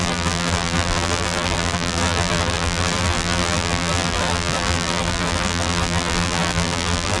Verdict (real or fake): fake